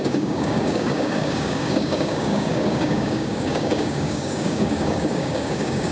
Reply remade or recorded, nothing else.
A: remade